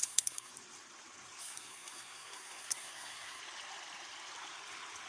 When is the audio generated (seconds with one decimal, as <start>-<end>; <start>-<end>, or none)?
0.0-0.5; 1.4-3.4